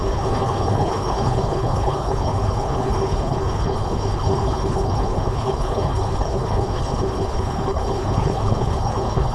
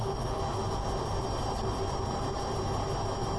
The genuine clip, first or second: second